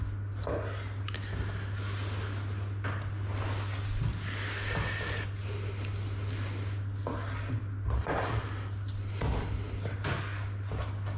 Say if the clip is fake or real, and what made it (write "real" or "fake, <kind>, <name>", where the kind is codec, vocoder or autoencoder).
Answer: real